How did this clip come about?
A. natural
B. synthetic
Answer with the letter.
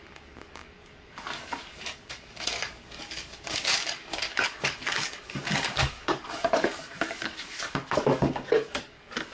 B